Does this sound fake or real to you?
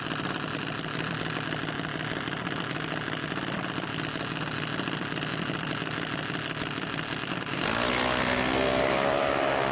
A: real